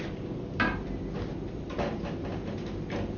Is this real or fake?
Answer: real